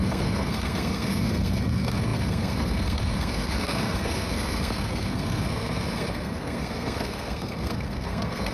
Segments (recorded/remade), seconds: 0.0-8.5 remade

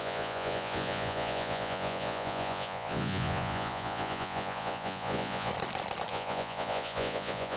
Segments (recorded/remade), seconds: 0.0-5.5 remade; 5.5-6.1 recorded; 6.1-7.6 remade